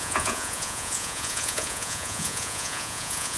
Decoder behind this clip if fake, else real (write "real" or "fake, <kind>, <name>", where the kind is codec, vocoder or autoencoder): fake, vocoder, Vocos